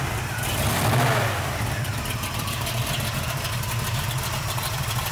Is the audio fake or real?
fake